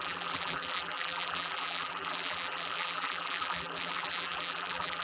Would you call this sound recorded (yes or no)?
no